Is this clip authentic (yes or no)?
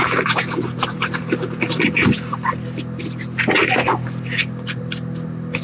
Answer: yes